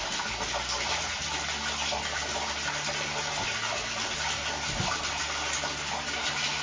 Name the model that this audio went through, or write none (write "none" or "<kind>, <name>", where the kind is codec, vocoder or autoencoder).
none